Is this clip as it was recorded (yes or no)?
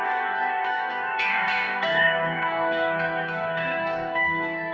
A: no